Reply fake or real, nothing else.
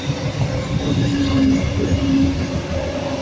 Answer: real